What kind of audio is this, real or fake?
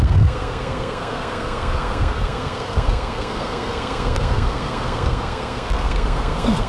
fake